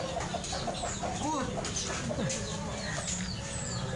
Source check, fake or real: real